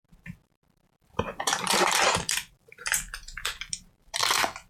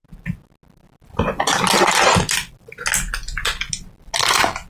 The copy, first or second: first